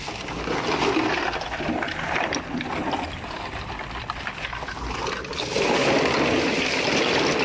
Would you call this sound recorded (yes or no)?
yes